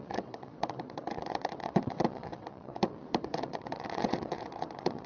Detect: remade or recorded remade